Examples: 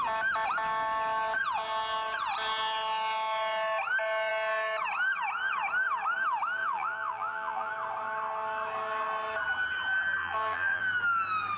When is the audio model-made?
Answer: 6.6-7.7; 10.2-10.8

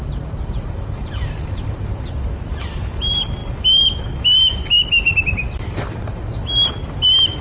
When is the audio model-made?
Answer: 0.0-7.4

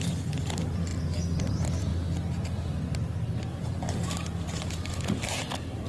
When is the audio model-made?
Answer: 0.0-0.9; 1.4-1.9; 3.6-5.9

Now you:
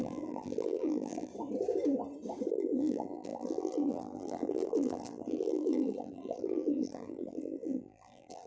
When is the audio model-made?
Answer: 0.0-1.3; 2.5-8.5

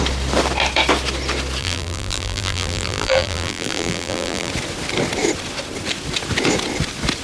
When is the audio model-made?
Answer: 1.6-4.5

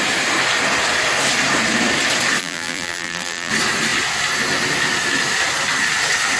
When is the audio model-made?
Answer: 2.4-3.5

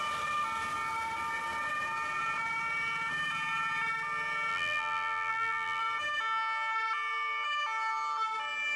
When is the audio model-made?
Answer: 4.5-5.8

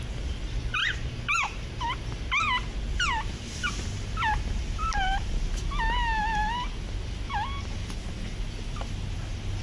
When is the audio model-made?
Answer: 0.8-1.8; 2.9-5.3